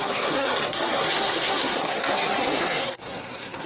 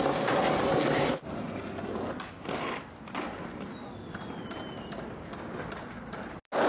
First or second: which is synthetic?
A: first